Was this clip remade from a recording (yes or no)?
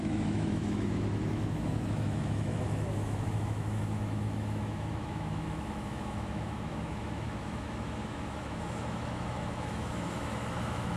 yes